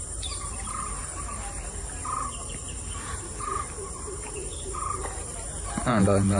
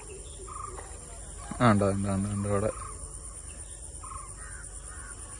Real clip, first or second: second